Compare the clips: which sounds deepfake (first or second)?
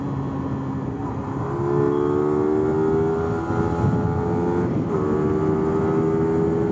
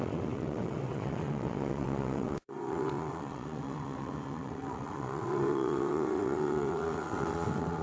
second